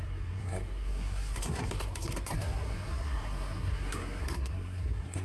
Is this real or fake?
fake